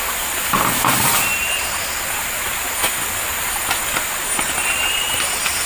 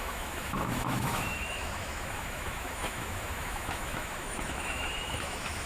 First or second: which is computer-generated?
second